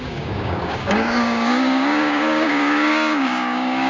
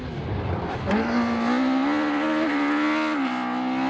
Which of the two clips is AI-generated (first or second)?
first